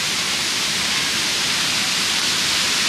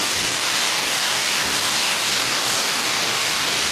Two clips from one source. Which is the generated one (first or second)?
second